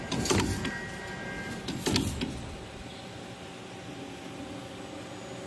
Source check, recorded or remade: recorded